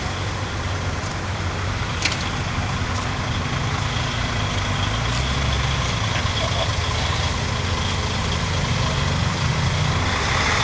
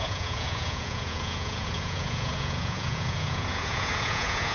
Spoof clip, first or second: second